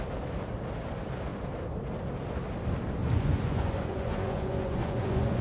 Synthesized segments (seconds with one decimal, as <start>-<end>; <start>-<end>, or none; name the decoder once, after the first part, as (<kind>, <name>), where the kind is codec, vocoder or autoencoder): 3.0-5.4 (vocoder, Vocos)